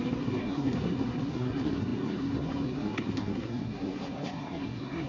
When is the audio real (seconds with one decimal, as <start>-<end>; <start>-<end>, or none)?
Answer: none